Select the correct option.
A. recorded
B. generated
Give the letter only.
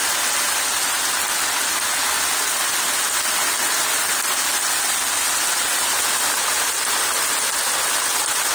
A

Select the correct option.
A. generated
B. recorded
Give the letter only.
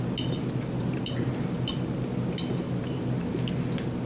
B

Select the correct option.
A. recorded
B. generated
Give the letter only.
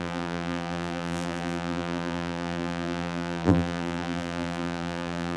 B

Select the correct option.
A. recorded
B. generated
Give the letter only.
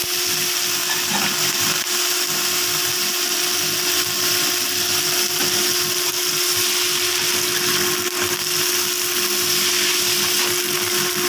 A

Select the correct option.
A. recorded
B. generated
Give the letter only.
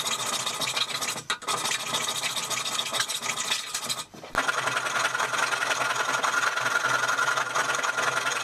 A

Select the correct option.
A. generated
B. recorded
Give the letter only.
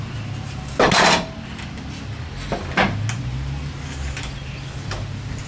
B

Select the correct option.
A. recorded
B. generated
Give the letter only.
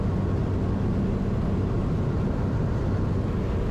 A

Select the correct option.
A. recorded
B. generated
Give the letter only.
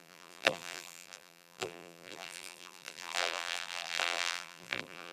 B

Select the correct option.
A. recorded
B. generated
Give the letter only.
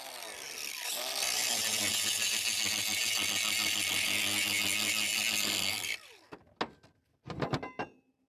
A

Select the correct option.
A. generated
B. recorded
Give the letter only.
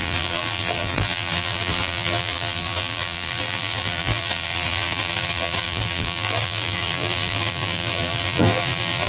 A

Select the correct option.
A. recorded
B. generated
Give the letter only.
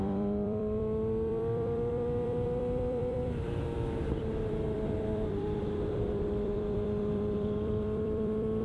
B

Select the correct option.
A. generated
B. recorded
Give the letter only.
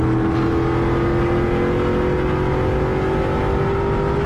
B